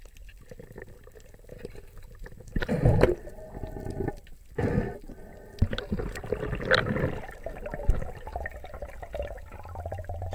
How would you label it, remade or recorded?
recorded